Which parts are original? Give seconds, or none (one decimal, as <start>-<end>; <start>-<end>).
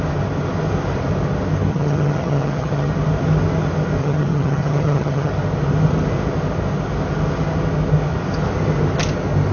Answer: 0.0-1.7; 2.9-4.0; 5.3-9.5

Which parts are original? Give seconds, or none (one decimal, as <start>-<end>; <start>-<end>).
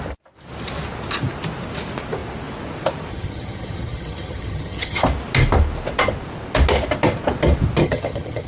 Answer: 0.0-3.1; 5.0-7.8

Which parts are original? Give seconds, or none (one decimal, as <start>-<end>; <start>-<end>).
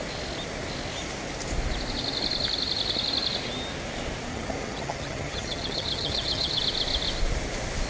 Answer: 0.0-4.3; 6.6-7.9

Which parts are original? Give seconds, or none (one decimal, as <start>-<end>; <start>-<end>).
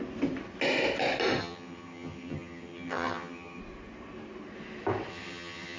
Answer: 0.0-1.4; 3.6-5.1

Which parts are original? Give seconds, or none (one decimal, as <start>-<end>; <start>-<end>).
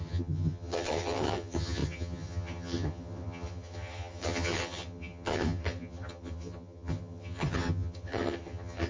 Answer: none